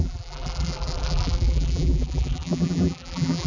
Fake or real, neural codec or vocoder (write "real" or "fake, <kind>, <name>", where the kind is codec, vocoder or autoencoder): fake, vocoder, BigVGAN v2